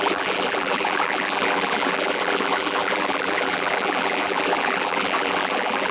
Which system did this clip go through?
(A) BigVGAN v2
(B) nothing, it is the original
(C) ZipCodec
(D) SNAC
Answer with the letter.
A